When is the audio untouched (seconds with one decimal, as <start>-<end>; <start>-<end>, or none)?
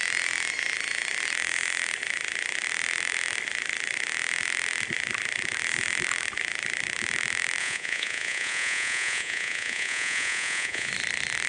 0.0-7.6; 10.9-11.5